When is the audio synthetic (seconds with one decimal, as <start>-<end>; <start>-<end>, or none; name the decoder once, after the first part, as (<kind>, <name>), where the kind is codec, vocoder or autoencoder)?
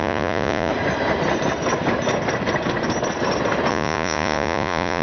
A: 0.0-0.7 (vocoder, Vocos); 3.7-5.0